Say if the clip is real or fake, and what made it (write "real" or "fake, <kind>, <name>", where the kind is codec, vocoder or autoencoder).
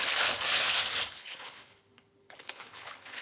fake, codec, HILCodec